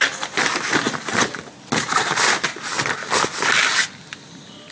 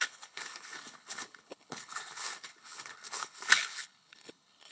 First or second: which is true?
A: first